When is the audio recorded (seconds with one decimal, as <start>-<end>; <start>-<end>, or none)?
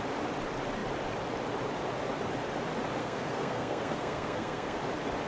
0.0-3.0; 4.8-5.3